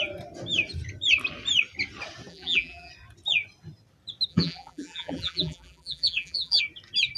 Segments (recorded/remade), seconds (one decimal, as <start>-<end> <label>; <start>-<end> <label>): 0.0-2.3 recorded; 2.3-2.9 remade; 2.9-4.3 recorded; 4.3-6.6 remade; 6.6-7.2 recorded